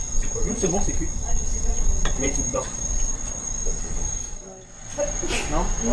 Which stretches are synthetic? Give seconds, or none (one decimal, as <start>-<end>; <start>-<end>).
0.0-3.5